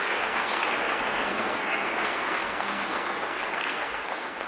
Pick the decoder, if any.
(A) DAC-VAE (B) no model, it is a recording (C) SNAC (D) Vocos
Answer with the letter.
C